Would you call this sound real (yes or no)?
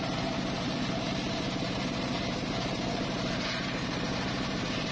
no